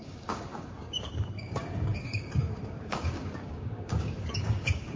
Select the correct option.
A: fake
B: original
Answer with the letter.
A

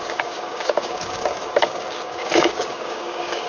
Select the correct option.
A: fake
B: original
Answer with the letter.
A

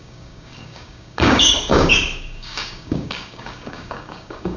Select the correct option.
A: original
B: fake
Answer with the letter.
B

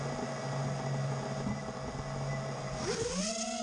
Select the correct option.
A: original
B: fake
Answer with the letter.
A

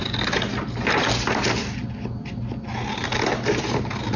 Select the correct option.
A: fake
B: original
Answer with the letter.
B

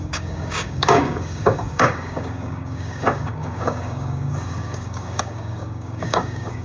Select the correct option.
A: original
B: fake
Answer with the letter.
B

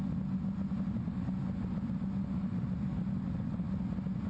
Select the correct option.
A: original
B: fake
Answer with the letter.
A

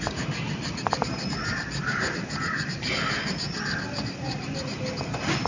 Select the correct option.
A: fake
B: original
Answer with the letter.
B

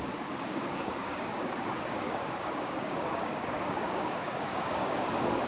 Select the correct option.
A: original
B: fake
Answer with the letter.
B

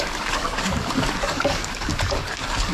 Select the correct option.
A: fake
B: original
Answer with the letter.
A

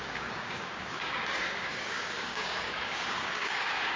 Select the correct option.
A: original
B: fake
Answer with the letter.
B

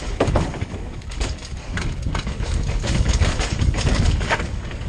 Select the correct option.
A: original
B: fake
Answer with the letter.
B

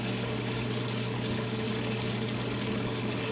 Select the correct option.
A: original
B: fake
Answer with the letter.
B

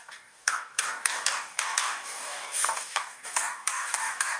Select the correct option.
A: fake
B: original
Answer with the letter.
A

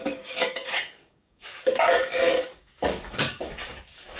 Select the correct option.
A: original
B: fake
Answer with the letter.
B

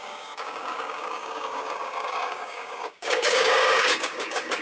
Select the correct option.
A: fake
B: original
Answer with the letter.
A